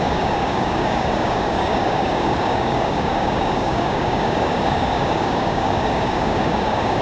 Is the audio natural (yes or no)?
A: no